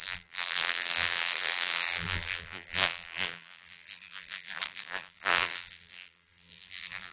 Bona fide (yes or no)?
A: no